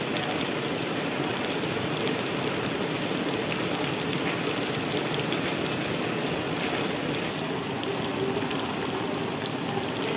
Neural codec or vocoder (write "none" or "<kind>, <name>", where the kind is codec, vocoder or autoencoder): none